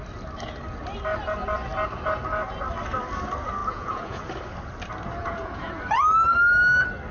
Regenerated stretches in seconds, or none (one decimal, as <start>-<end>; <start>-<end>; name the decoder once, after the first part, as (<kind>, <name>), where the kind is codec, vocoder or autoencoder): 3.6-4.2 (vocoder, Vocos); 5.2-5.8